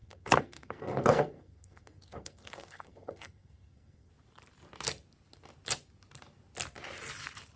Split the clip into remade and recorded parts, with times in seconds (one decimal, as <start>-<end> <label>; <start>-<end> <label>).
0.0-4.1 remade; 4.1-7.6 recorded